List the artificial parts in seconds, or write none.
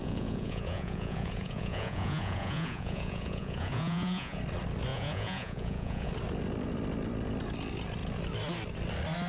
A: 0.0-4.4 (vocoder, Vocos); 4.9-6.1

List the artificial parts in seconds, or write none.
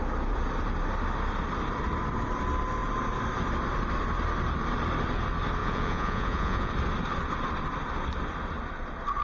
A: 5.6-6.7 (vocoder, Vocos)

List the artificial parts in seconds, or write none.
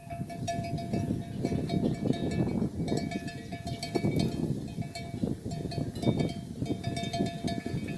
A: none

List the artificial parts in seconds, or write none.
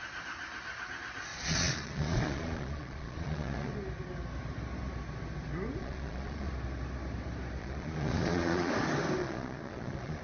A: 1.3-3.7 (vocoder, Vocos); 5.8-6.5; 7.6-8.7; 9.2-10.2